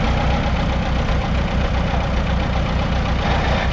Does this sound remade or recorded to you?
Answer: recorded